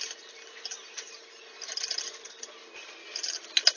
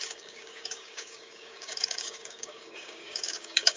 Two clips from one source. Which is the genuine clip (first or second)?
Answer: first